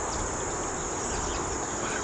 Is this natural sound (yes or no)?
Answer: yes